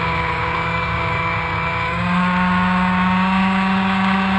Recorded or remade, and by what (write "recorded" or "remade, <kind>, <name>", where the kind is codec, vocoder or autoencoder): remade, codec, DAC